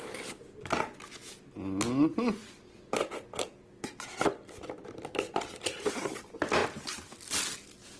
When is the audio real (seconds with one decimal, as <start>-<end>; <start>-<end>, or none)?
0.0-2.1; 5.9-8.0